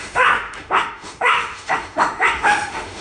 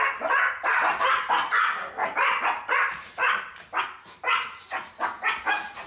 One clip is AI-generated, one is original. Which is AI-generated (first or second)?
first